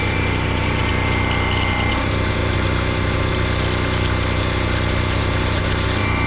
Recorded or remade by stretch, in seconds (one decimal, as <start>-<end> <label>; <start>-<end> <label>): 0.0-0.9 remade; 0.9-1.9 recorded; 1.9-2.4 remade; 2.4-5.2 recorded; 5.2-6.3 remade